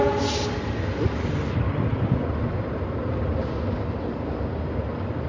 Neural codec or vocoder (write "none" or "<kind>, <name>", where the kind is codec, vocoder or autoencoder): none